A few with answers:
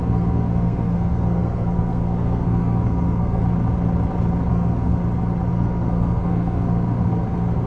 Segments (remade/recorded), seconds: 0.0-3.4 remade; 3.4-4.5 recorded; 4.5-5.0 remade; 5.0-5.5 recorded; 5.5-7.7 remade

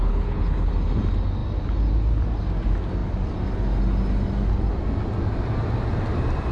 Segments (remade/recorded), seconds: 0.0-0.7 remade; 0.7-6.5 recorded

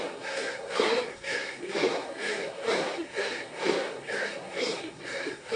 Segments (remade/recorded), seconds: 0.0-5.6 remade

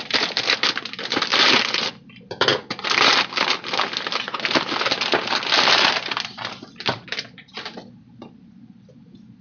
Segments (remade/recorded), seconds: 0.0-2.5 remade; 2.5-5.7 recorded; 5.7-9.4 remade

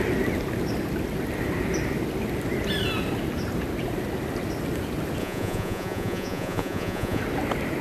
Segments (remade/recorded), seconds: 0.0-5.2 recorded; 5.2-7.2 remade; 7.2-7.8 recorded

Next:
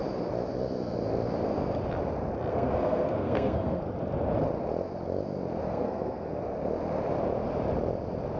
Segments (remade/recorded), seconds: 0.0-2.5 recorded; 2.5-3.8 remade; 3.8-5.7 recorded; 5.7-6.4 remade; 6.4-8.4 recorded

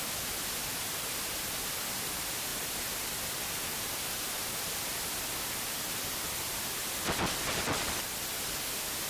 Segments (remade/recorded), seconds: 0.0-9.1 recorded

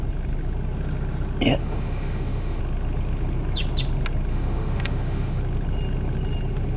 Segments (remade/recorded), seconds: 0.0-1.6 recorded; 1.6-2.6 remade; 2.6-4.3 recorded; 4.3-5.4 remade; 5.4-6.8 recorded